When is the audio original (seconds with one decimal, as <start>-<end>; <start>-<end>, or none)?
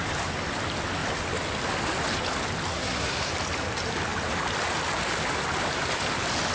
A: 0.0-2.7; 3.3-6.5